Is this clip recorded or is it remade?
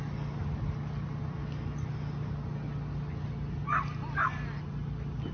recorded